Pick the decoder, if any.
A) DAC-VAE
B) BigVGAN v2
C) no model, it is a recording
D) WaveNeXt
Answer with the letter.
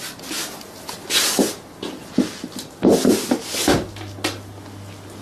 C